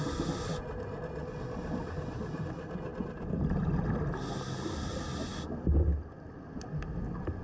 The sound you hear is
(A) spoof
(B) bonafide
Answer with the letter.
B